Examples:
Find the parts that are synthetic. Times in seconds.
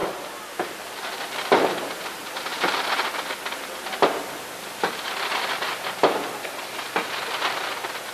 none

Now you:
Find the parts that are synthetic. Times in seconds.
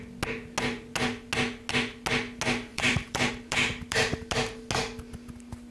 2.7-3.3 (vocoder, BigVGAN v2)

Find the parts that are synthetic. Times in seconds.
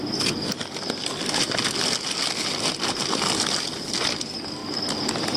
4.6-5.4 (vocoder, BigVGAN v2)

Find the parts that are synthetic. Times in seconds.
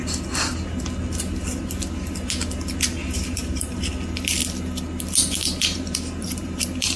3.0-3.8 (vocoder, BigVGAN v2); 5.4-7.0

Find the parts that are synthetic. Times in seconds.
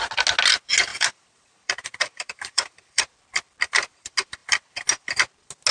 0.9-3.1 (vocoder, BigVGAN v2)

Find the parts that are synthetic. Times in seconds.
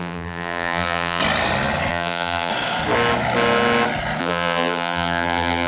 0.0-1.2 (vocoder, BigVGAN v2); 1.9-2.5; 4.2-5.7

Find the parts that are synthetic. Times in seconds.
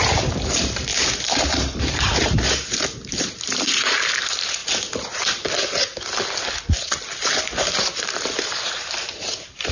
0.0-4.6 (vocoder, BigVGAN v2); 8.0-9.7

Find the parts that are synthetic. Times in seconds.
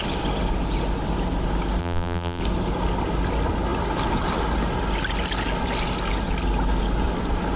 1.8-2.4 (vocoder, BigVGAN v2)